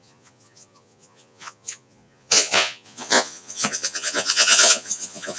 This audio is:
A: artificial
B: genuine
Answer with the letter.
A